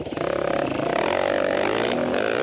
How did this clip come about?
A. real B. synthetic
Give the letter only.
A